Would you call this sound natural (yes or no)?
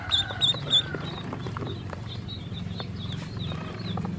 no